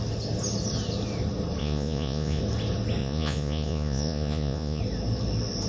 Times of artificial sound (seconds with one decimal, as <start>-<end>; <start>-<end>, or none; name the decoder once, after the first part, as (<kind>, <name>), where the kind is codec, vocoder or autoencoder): 1.6-2.4 (vocoder, Vocos); 3.0-4.8